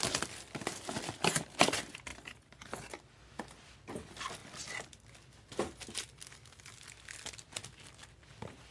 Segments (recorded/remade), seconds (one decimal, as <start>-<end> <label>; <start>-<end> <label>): 0.0-8.7 recorded